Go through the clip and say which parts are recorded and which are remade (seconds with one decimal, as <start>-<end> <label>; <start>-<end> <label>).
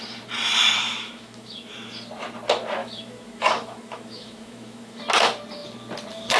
0.0-0.8 recorded; 0.8-1.7 remade; 1.7-2.8 recorded; 2.8-5.0 remade; 5.0-6.4 recorded